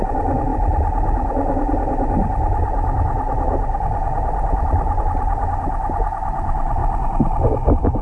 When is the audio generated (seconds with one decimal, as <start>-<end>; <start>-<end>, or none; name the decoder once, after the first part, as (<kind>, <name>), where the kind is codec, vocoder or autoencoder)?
none